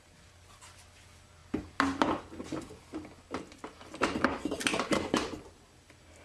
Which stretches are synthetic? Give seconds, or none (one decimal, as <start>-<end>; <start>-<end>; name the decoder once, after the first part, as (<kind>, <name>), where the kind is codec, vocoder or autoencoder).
none